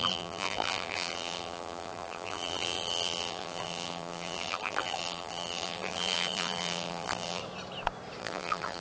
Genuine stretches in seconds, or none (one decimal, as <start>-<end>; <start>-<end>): 7.4-8.2